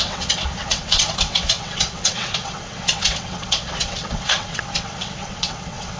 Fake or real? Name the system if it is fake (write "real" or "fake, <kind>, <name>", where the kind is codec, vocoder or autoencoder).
fake, vocoder, WaveNeXt